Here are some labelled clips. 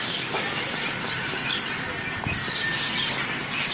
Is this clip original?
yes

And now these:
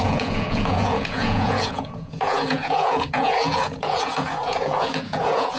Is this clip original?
no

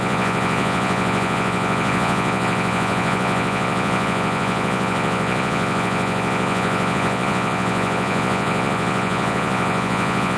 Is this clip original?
no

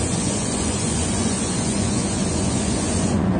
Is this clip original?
no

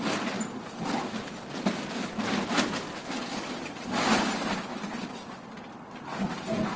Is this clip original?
yes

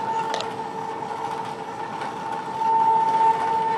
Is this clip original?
yes